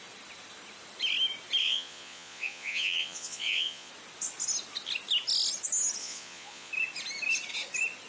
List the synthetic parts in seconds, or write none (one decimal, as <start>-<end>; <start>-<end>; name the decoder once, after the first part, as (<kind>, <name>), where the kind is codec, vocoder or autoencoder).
1.6-3.9 (vocoder, Vocos); 6.0-6.7